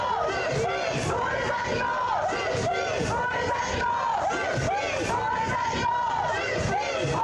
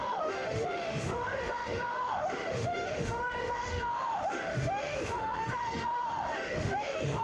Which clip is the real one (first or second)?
first